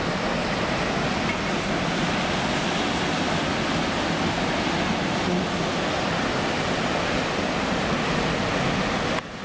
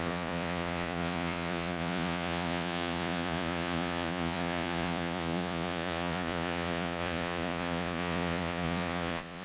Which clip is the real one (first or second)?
first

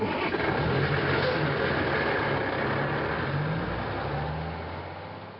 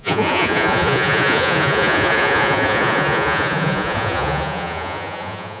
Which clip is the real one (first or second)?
first